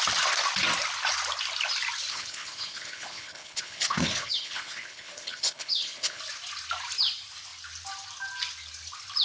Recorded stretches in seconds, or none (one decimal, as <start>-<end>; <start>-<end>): 0.0-2.1; 6.2-9.2